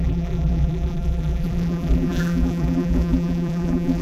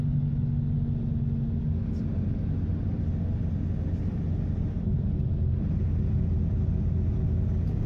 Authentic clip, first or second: second